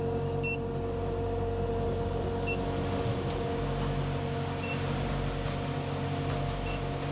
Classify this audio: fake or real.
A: real